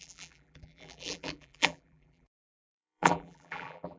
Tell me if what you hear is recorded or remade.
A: remade